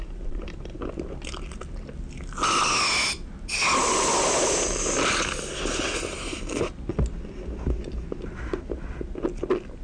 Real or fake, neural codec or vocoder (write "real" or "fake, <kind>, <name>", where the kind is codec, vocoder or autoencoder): real